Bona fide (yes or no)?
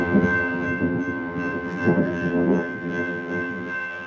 no